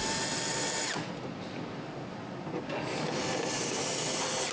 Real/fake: real